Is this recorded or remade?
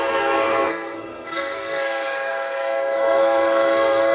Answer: remade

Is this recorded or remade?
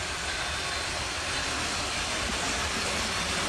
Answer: recorded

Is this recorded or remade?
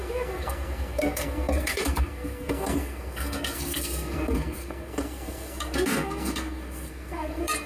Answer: remade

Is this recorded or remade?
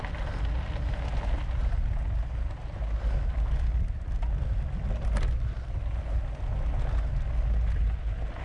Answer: recorded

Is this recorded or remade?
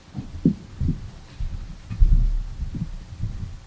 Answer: recorded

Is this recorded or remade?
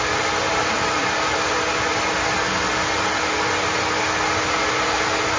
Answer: recorded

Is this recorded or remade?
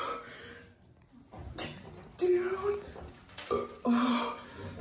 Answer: recorded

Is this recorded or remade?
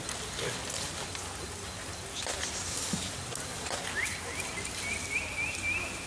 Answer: recorded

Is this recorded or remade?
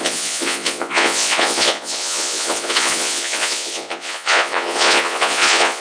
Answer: remade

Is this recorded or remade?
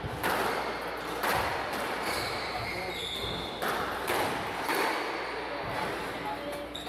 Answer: recorded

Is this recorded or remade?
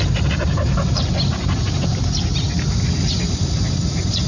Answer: recorded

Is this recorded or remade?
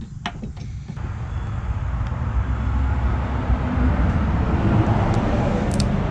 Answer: recorded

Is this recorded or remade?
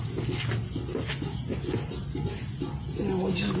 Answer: recorded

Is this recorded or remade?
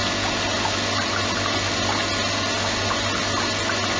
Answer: recorded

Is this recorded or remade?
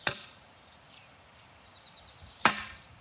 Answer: remade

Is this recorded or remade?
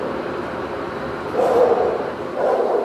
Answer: remade